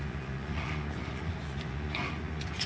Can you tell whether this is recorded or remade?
remade